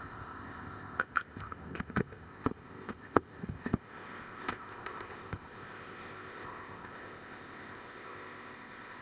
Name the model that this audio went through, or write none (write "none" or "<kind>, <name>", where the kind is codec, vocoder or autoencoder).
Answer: codec, ZipCodec